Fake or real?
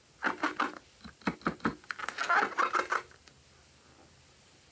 real